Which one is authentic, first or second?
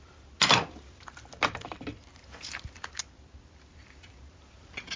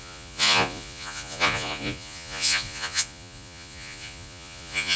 first